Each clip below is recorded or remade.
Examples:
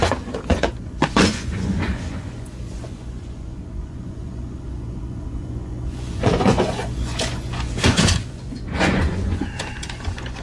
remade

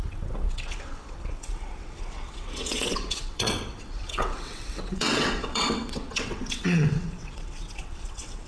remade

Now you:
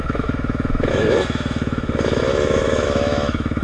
remade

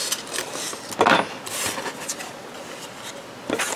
recorded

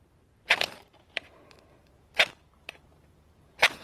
remade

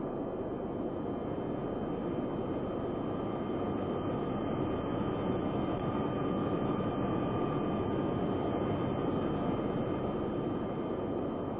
recorded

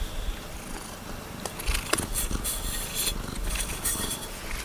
recorded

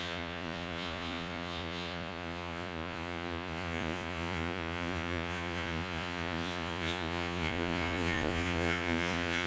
remade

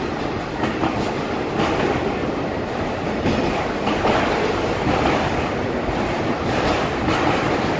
remade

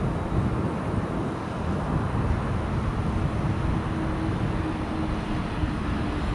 recorded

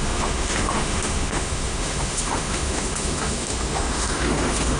remade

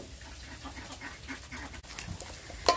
recorded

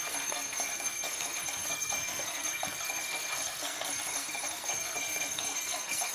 remade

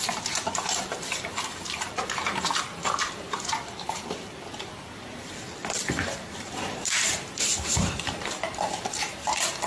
remade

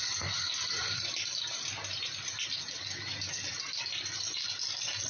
recorded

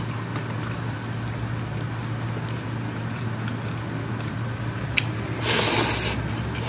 recorded